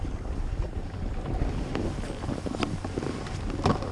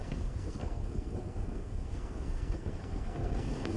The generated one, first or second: second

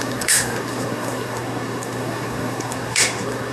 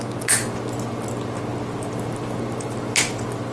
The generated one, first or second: first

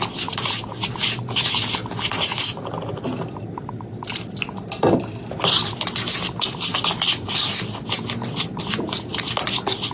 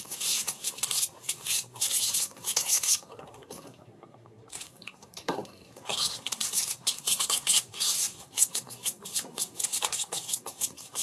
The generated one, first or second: second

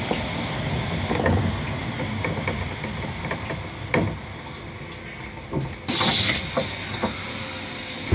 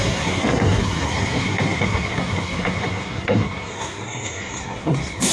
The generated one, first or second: second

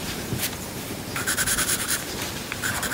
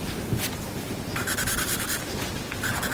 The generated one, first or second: first